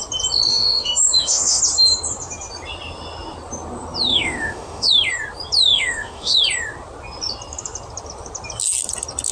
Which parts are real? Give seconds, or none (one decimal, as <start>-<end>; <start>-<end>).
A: 0.0-0.5; 1.6-4.1; 4.9-5.7; 6.4-9.3